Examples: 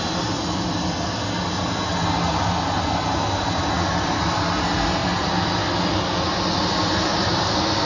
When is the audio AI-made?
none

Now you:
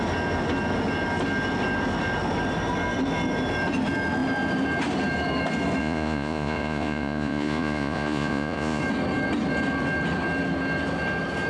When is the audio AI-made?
5.8-8.8 (vocoder, Vocos)

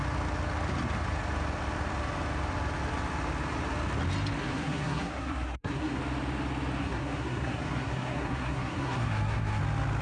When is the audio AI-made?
4.4-6.0 (codec, SNAC); 6.8-9.6